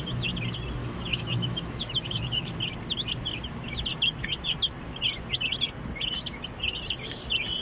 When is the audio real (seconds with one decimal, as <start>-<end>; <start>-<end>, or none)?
0.0-0.8; 2.5-7.6